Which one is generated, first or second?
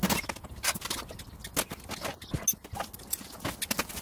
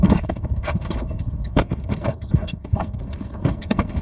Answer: second